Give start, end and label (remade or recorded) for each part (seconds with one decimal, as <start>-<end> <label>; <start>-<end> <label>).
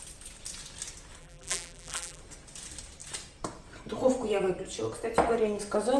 0.0-1.2 recorded; 1.2-2.2 remade; 2.2-6.0 recorded